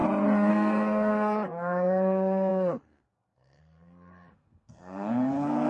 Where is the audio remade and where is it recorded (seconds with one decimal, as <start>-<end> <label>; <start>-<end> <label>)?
0.0-0.5 recorded; 0.5-5.7 remade